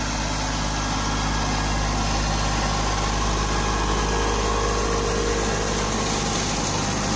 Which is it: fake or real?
real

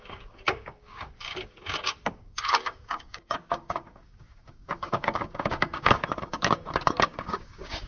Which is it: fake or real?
fake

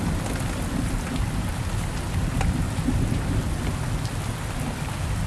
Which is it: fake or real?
real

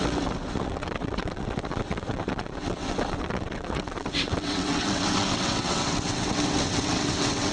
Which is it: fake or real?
fake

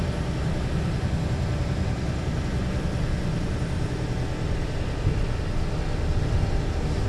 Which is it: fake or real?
real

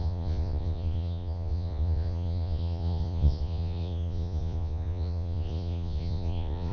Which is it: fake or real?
fake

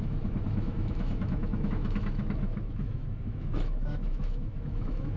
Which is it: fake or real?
fake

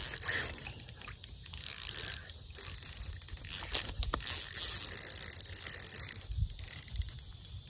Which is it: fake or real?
real